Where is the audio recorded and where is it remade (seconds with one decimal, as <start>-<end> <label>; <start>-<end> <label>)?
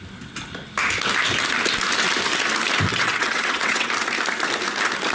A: 0.0-2.9 recorded; 2.9-3.9 remade; 3.9-5.1 recorded